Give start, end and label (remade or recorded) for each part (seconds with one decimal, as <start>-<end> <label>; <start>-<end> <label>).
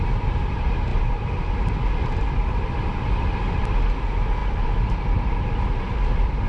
0.0-6.5 recorded